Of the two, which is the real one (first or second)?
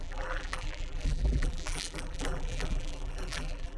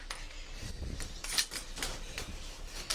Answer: second